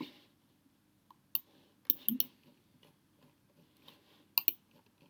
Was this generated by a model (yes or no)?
no